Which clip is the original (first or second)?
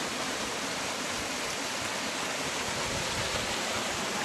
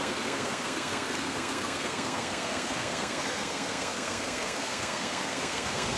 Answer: first